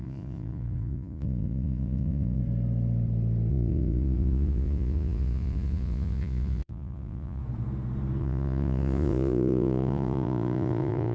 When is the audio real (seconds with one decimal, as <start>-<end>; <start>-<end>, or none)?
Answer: 2.4-3.5; 7.4-8.2